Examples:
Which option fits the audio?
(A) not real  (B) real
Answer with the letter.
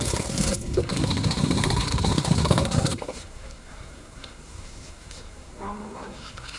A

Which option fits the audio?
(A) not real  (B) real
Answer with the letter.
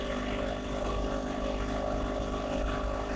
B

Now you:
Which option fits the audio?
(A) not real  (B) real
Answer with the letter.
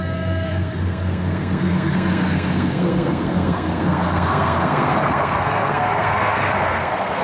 A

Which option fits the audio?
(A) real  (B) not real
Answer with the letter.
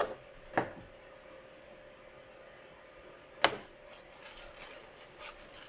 A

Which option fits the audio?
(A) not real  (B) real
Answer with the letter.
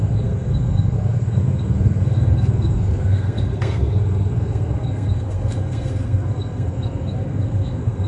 A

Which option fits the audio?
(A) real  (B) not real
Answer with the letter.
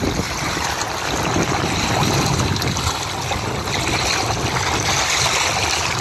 A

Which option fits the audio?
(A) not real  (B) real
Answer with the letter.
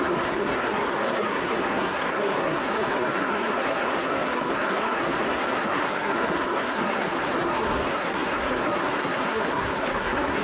A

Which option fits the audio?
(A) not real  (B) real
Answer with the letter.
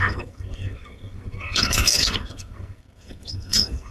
A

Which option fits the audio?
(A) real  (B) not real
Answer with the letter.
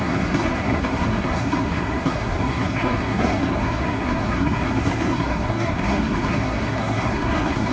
B